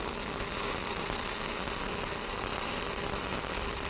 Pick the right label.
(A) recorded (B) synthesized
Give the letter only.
A